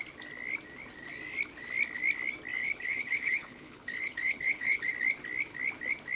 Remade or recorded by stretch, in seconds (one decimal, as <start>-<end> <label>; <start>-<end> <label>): 0.0-2.6 recorded; 2.6-4.9 remade; 4.9-6.2 recorded